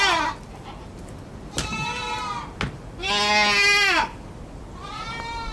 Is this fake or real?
real